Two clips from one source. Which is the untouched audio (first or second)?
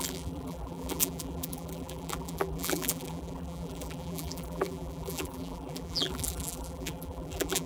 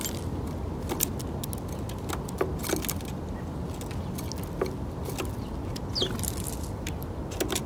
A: second